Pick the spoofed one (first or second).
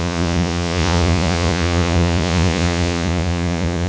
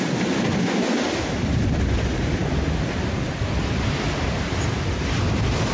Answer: first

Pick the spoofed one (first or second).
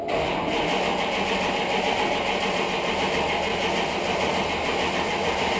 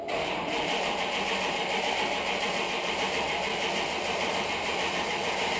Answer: second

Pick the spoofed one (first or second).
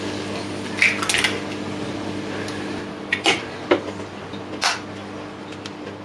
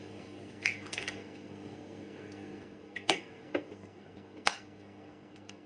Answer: second